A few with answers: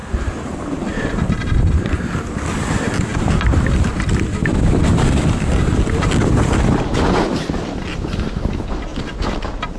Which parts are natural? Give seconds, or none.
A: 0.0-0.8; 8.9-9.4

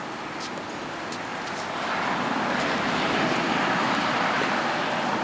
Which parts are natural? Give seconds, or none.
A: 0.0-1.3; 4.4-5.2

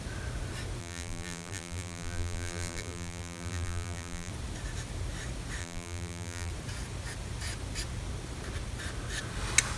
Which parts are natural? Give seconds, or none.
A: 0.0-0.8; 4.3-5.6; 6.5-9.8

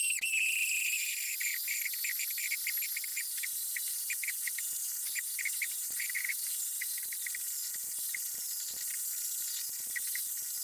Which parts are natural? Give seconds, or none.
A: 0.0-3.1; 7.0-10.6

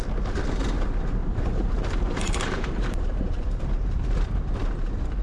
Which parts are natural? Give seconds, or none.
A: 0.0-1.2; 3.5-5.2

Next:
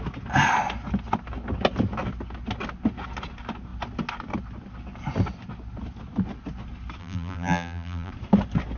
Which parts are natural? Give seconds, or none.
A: 0.0-7.0; 8.1-8.8

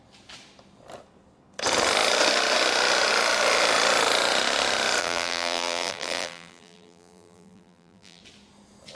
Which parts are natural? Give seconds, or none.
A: 0.0-5.0; 8.2-8.9

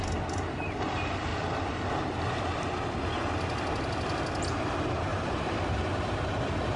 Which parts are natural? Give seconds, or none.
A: 0.0-5.1; 6.2-6.8